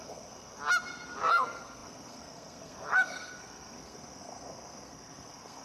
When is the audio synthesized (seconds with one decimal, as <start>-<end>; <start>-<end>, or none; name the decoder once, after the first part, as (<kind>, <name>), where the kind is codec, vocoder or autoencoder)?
0.0-0.6 (codec, SNAC); 1.3-5.6